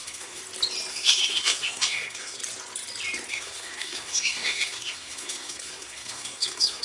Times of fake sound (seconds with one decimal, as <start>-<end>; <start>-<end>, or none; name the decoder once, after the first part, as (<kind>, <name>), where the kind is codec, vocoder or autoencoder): 0.0-0.4 (codec, SNAC); 0.9-2.4; 3.3-6.8